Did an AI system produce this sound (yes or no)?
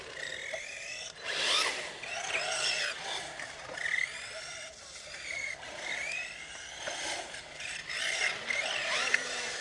no